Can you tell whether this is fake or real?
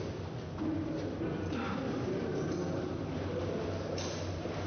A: real